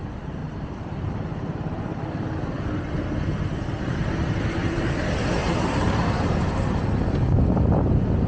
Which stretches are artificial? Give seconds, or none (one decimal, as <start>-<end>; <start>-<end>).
0.4-1.8; 5.4-6.1